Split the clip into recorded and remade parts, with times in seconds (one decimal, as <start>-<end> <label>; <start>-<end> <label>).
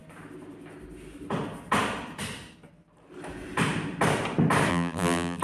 0.0-4.7 recorded; 4.7-5.4 remade